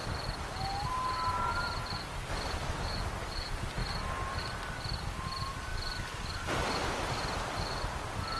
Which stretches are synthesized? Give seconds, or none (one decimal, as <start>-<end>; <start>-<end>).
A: none